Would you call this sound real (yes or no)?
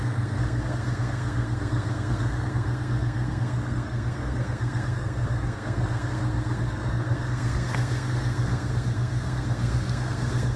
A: no